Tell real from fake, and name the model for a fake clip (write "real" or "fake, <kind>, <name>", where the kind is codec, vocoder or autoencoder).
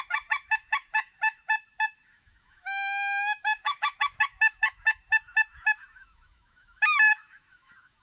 fake, autoencoder, DAC-VAE